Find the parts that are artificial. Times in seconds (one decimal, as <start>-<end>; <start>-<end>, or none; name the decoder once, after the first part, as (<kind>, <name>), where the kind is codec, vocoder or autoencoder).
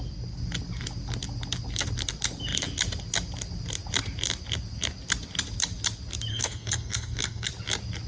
6.3-7.5 (codec, SNAC)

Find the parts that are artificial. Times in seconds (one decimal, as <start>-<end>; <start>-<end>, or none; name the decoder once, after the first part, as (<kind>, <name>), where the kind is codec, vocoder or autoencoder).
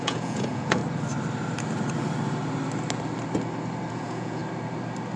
0.0-0.8 (vocoder, Vocos); 3.9-4.4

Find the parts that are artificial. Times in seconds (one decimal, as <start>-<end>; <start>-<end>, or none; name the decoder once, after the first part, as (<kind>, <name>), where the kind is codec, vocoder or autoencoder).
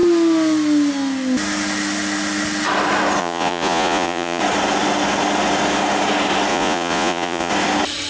3.2-4.4 (vocoder, Vocos); 6.5-7.5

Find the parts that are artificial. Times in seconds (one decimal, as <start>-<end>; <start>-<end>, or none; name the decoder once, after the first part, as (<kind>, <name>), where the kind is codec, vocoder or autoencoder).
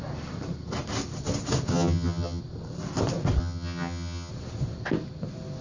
1.7-2.4 (vocoder, HiFi-GAN); 3.4-4.3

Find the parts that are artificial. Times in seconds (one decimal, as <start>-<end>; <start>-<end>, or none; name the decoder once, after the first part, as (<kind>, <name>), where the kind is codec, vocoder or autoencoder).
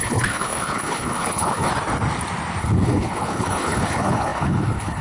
0.0-1.7 (codec, HILCodec); 2.6-5.0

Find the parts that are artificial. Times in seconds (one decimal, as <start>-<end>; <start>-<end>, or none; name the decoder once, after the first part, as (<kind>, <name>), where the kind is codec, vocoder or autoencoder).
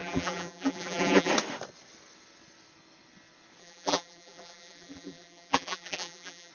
0.0-1.3 (vocoder, BigVGAN v2); 3.6-6.5